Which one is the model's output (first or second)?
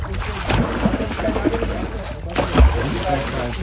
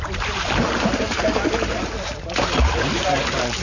second